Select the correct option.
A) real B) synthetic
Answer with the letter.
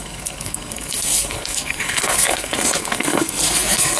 B